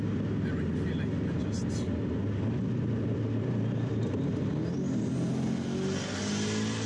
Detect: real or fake real